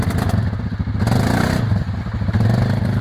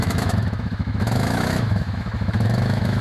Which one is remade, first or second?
second